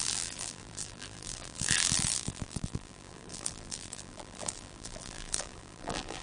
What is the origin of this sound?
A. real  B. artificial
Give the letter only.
B